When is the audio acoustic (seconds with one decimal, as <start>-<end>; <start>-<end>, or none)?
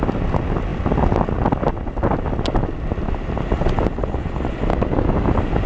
0.0-4.7; 5.3-5.7